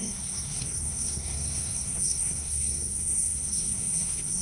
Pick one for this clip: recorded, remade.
remade